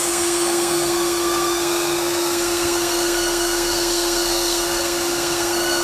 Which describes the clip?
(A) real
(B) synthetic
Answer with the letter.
B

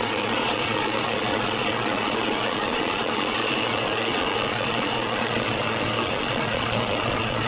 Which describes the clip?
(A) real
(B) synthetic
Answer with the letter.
B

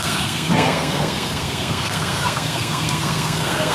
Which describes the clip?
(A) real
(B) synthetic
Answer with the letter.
B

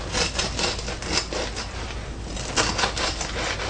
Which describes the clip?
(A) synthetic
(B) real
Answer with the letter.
B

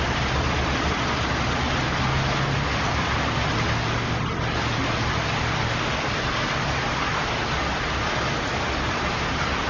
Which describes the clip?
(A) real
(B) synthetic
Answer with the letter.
A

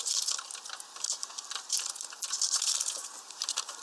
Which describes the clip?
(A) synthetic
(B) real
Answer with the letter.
B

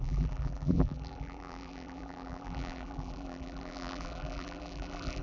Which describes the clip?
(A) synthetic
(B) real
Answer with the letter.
A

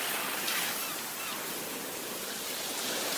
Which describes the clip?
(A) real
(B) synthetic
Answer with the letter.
B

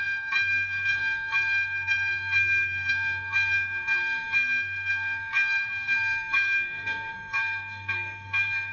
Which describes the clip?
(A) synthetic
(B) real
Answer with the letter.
A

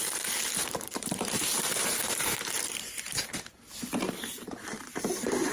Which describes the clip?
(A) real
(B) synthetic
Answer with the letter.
B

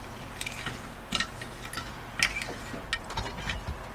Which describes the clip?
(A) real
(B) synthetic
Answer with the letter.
A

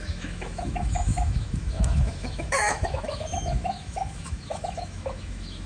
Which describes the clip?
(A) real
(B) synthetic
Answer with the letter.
B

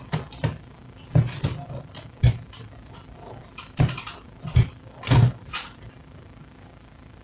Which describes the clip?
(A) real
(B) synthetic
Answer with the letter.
A